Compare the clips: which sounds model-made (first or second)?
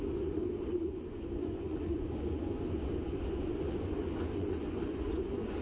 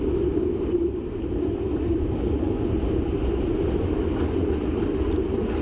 first